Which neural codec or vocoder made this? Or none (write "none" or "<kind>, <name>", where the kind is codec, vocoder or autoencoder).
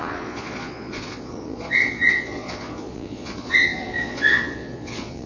vocoder, Vocos